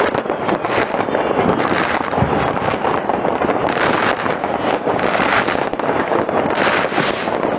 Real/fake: fake